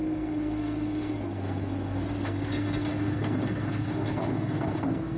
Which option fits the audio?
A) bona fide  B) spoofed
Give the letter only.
B